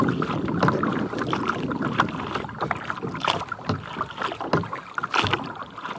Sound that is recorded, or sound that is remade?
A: recorded